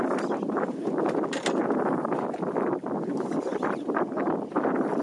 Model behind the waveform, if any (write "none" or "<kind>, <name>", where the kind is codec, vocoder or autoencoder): none